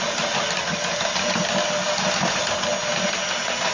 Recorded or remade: recorded